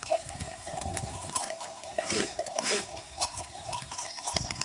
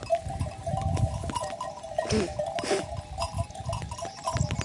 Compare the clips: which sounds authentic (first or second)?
second